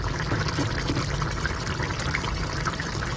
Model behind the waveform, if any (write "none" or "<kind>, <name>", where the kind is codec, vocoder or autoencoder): none